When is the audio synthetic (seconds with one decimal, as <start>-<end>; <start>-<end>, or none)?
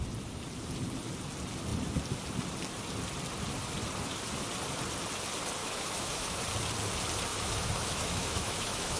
5.6-6.4; 7.3-9.0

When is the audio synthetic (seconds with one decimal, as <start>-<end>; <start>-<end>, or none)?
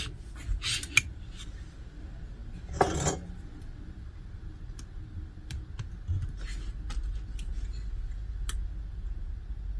none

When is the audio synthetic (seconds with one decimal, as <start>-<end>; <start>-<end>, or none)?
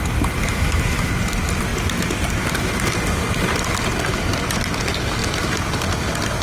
0.4-1.1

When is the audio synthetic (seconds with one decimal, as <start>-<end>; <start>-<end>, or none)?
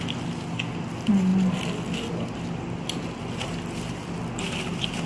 none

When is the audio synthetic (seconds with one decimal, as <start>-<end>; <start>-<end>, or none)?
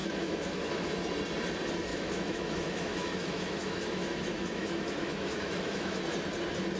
0.0-0.9; 1.9-6.0